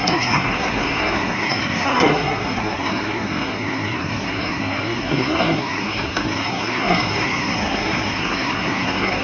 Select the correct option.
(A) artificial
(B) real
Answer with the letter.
A